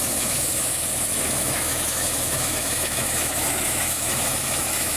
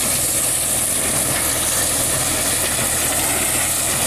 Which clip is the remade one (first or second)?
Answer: first